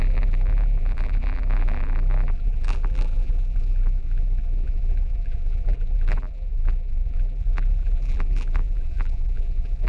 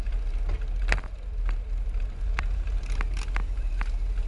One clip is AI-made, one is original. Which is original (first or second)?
second